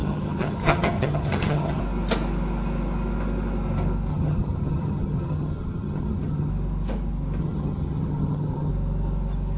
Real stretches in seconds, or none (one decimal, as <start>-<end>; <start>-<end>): 1.8-4.1; 6.5-7.4; 8.7-9.6